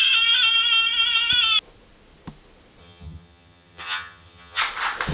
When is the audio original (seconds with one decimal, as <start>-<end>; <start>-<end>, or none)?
0.0-2.8; 4.6-5.1

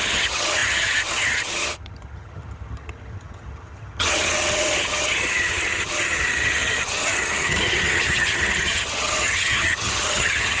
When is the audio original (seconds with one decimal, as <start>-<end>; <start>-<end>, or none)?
none

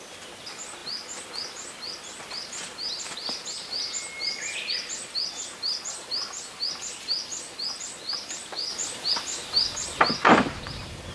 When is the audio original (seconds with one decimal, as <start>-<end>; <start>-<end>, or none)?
0.0-8.7; 10.0-11.1

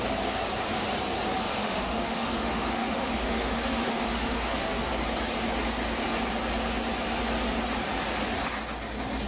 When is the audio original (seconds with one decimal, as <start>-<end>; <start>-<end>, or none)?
0.0-1.5; 4.9-9.3

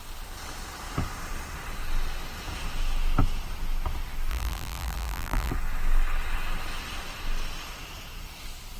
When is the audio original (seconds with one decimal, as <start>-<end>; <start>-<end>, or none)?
0.0-4.3; 5.5-8.8

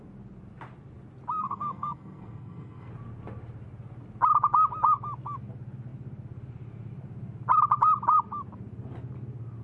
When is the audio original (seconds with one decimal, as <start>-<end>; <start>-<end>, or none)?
0.0-1.4; 2.9-9.6

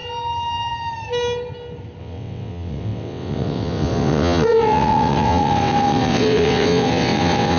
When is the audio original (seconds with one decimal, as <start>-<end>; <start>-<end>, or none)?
0.0-2.0

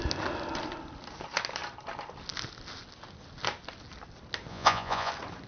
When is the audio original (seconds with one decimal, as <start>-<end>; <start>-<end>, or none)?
0.0-4.5; 5.1-5.5